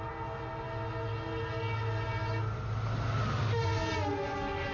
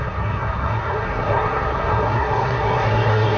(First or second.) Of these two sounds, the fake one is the second